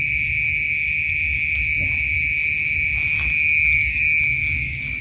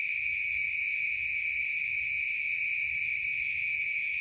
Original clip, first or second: first